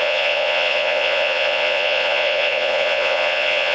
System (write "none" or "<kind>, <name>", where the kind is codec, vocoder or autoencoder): vocoder, Vocos